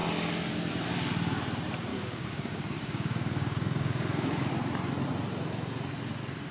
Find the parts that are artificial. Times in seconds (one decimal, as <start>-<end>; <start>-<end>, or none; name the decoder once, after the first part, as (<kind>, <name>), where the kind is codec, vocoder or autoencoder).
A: 1.9-4.5 (codec, DAC)